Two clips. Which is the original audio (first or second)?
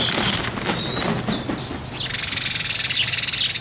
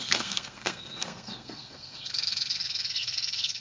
first